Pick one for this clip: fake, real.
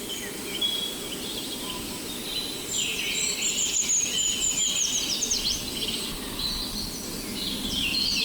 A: real